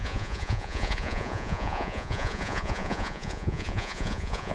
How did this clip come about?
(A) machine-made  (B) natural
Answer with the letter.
A